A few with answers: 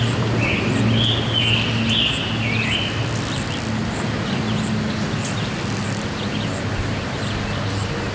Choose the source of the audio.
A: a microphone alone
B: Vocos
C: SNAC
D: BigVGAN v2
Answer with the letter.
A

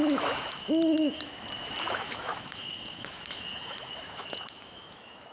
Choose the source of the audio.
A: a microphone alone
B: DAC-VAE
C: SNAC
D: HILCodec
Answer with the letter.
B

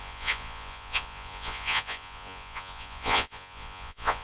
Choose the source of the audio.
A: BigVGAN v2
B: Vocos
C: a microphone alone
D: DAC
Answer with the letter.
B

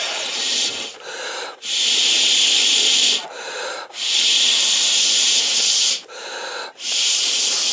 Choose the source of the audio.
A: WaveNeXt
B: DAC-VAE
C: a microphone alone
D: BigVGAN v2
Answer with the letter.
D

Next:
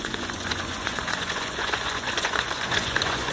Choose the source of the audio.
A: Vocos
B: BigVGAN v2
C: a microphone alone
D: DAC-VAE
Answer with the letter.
A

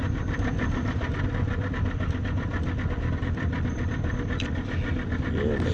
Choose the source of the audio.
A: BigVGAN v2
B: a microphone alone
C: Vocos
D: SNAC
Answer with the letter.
B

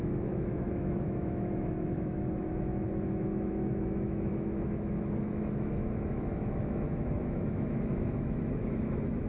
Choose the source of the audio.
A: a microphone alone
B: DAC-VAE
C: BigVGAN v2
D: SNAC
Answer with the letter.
B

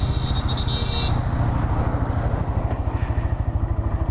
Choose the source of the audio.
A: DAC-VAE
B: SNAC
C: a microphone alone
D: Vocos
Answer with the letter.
C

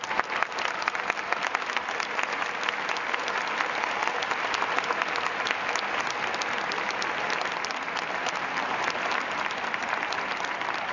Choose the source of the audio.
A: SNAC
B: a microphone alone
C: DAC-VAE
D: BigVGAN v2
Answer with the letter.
B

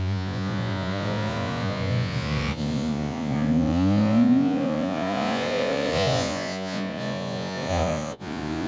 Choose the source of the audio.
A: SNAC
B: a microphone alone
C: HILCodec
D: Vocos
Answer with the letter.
D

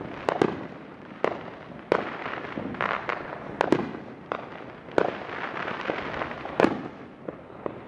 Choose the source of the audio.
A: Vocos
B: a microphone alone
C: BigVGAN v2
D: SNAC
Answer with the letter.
C